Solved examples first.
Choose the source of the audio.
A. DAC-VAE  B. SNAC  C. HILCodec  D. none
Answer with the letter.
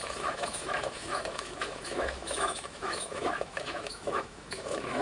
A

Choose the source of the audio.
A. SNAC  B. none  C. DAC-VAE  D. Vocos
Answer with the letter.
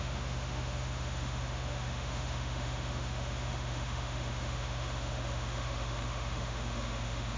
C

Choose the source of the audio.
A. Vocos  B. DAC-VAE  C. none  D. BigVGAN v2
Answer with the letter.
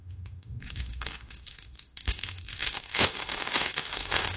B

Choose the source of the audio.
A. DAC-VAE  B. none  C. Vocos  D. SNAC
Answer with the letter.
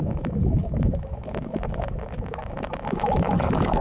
A